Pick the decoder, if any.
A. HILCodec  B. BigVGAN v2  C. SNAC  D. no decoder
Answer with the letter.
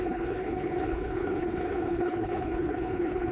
A